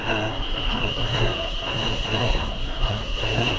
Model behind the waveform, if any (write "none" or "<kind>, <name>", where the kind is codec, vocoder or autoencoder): codec, SNAC